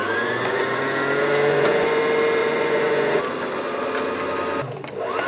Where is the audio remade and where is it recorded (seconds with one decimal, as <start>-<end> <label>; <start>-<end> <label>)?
0.0-0.8 remade; 0.8-1.5 recorded; 1.5-2.0 remade; 2.0-2.4 recorded; 2.4-3.2 remade; 3.2-5.3 recorded